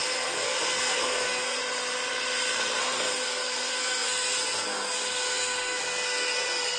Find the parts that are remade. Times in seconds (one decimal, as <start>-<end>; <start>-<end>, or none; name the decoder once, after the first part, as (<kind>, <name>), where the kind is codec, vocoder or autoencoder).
0.0-1.6 (codec, SNAC); 2.8-6.8